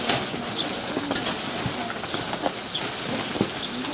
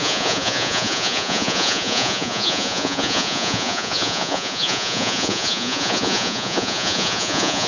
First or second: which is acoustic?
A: first